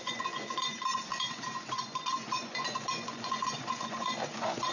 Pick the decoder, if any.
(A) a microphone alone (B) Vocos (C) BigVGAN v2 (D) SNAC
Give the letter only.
B